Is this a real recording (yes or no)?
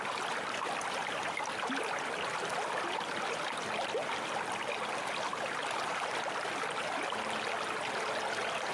yes